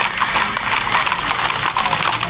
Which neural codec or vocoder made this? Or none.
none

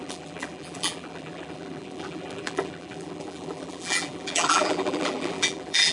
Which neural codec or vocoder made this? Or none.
vocoder, BigVGAN v2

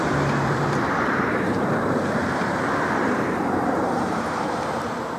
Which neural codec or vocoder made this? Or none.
vocoder, BigVGAN v2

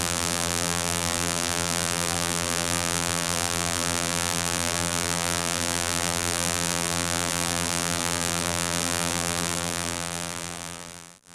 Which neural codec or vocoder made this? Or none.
vocoder, BigVGAN v2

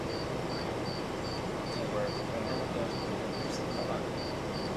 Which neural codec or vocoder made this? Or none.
none